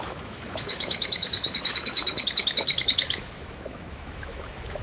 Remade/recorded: remade